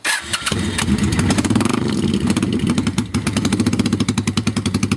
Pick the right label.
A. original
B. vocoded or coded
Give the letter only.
B